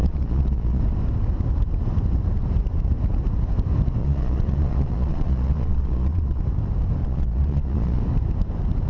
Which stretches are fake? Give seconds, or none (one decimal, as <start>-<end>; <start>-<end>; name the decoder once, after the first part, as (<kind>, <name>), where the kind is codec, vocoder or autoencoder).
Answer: 0.0-0.8 (vocoder, Vocos); 4.0-6.4; 7.0-8.0